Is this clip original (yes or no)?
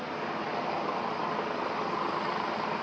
yes